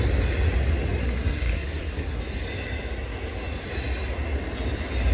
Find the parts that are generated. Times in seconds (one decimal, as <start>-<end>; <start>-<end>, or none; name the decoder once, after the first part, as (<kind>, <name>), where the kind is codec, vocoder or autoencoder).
1.0-2.2 (codec, SNAC)